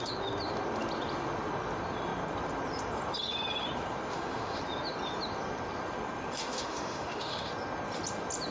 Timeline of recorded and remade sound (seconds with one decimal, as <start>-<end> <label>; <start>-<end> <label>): 0.0-4.1 recorded; 4.1-4.6 remade; 4.6-6.4 recorded; 6.4-7.5 remade; 7.5-8.5 recorded